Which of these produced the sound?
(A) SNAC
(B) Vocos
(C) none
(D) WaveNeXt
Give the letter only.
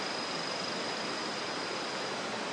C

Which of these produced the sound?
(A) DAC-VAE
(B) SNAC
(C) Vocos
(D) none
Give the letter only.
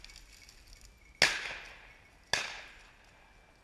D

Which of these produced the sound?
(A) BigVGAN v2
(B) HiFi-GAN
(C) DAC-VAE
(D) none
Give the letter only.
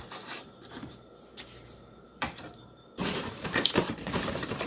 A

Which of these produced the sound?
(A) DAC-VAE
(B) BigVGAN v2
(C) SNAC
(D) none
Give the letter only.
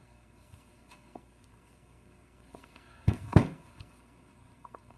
C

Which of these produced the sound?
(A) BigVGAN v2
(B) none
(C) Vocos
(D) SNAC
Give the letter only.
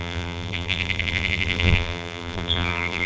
A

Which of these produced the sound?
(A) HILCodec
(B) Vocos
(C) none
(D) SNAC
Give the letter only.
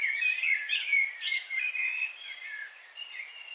B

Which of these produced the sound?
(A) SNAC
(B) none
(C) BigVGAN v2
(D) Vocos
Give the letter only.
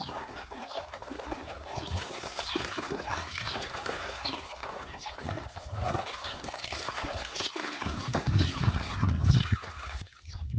A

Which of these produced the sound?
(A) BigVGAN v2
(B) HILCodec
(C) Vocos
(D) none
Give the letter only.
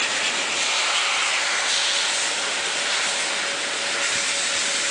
D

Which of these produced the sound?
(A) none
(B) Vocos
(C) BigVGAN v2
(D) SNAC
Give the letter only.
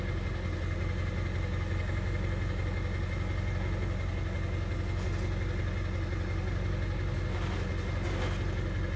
A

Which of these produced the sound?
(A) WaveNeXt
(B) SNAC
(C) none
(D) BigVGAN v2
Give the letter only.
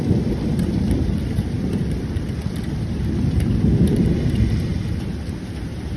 D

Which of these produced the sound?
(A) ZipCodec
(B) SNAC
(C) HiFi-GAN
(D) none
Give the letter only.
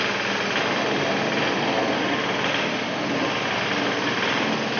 D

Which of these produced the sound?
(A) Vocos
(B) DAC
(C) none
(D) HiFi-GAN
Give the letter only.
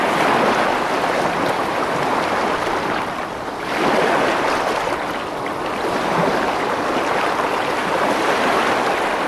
C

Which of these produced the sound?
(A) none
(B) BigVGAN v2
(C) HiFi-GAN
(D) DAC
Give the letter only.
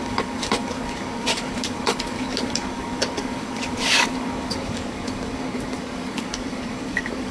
D